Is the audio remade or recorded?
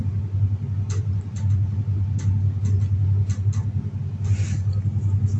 recorded